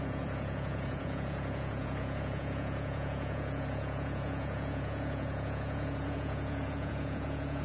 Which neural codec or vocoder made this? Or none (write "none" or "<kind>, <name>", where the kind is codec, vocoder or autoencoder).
vocoder, Vocos